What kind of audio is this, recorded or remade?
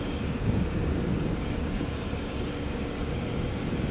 remade